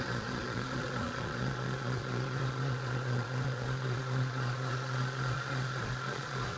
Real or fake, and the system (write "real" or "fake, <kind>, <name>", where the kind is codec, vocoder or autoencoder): fake, vocoder, Vocos